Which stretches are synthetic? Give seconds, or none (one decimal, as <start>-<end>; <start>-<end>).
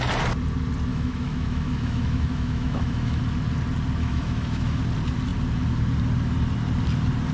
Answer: 0.9-3.2; 4.0-4.8